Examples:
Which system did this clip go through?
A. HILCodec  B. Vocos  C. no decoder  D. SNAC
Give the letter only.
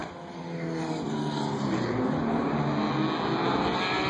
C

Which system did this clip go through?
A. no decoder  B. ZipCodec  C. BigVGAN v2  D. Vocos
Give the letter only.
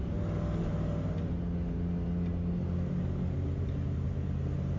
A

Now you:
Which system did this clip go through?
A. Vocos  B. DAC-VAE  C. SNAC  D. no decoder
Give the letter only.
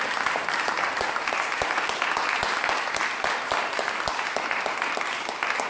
D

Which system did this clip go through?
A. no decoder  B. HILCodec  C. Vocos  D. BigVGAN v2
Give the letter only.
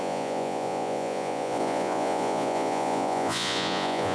C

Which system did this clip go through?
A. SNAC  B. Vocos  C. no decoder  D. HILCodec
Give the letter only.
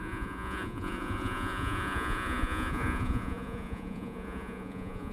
B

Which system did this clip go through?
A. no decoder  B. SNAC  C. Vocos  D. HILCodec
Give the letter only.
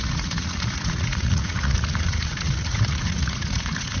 C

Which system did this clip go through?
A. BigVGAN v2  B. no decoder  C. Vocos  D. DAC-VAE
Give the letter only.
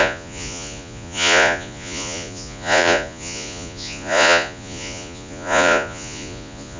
C